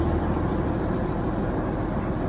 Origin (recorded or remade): recorded